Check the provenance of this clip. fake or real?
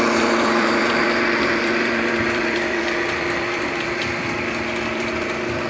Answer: fake